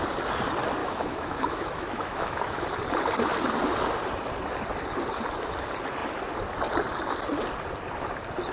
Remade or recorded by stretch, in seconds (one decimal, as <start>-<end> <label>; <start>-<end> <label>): 0.0-0.8 recorded; 0.8-2.7 remade; 2.7-8.5 recorded